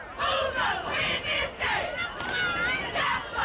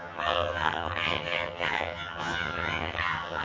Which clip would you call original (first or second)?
first